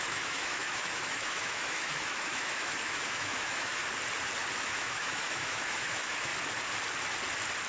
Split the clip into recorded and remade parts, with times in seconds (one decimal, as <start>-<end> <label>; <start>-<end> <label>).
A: 0.0-3.8 remade; 3.8-4.6 recorded; 4.6-6.3 remade; 6.3-7.7 recorded